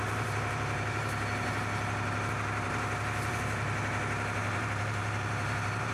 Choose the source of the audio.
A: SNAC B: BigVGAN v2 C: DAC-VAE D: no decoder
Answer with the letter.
B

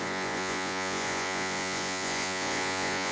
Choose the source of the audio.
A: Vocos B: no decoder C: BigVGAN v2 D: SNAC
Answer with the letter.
A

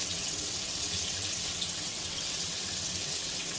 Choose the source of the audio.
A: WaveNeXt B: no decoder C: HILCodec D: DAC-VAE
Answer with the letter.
A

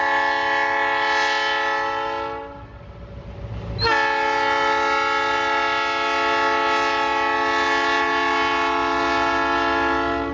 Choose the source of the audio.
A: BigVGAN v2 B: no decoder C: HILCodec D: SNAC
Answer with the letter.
B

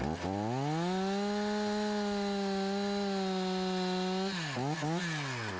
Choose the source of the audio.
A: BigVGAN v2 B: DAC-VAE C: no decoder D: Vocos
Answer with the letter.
C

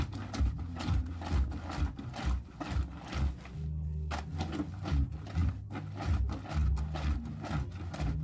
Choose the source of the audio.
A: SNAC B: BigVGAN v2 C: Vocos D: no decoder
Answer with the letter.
D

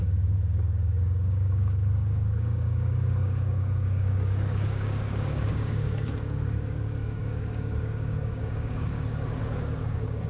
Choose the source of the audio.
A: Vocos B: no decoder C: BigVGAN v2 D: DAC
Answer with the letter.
D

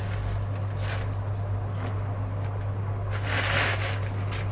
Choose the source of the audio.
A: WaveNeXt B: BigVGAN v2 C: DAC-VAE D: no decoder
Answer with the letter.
D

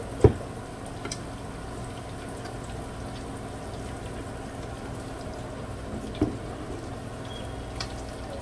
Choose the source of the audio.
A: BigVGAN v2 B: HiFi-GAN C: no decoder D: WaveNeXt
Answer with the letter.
C